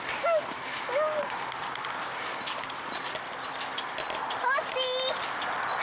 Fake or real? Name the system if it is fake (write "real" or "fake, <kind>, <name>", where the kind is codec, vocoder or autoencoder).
real